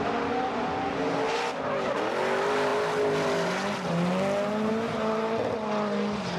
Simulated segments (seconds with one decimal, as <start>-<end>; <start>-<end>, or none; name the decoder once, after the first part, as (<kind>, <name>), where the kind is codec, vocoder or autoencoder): none